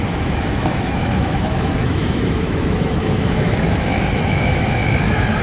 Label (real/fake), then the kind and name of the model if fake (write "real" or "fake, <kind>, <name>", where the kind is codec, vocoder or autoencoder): fake, autoencoder, DAC-VAE